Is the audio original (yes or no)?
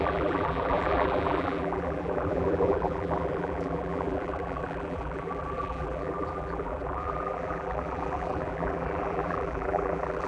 no